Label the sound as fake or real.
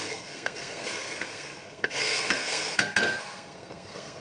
fake